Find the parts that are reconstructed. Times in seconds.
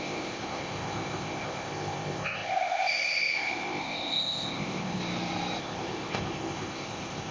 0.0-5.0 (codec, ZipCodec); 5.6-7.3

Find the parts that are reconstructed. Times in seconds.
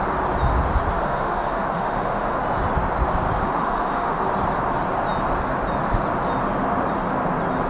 1.0-2.4 (autoencoder, DAC-VAE); 3.4-4.2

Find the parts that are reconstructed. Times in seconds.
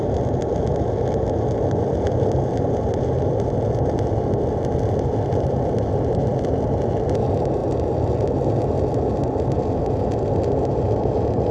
none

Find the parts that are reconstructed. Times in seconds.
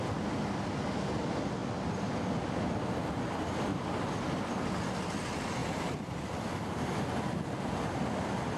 3.7-4.8 (vocoder, BigVGAN v2); 5.6-7.2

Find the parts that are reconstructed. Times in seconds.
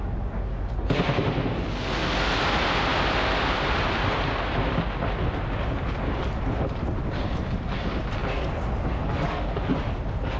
none